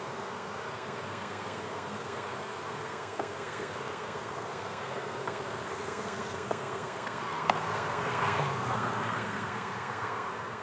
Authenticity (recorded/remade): remade